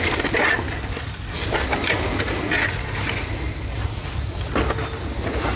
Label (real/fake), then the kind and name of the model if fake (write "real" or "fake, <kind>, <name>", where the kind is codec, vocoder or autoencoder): real